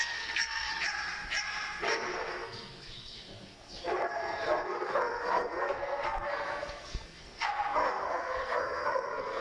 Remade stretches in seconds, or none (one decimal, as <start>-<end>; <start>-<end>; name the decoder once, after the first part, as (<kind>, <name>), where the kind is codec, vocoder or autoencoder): 0.0-0.7 (codec, SNAC); 1.8-9.4